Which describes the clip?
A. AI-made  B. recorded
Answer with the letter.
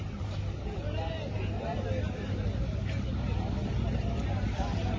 B